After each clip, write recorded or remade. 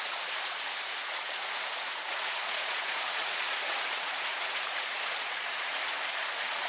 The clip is remade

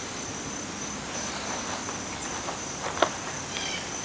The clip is recorded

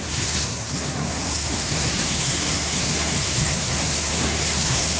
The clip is remade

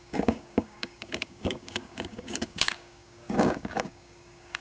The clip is remade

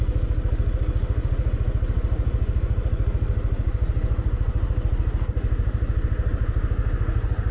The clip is recorded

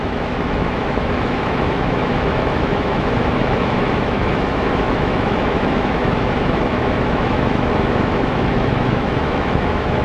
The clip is remade